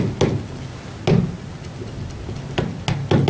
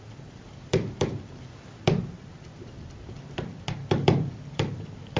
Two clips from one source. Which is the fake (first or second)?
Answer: second